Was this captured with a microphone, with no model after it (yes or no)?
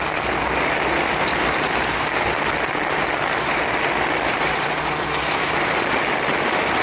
yes